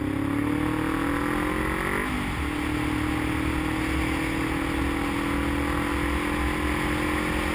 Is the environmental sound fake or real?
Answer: real